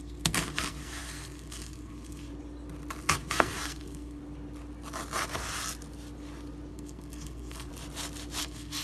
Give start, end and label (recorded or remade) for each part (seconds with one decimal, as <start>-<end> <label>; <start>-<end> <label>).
0.0-2.3 remade; 2.3-3.0 recorded; 3.0-4.2 remade; 4.2-6.7 recorded; 6.7-7.7 remade; 7.7-8.4 recorded; 8.4-8.8 remade